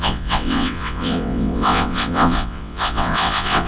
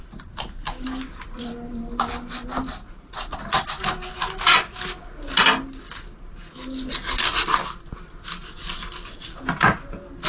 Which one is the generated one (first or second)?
first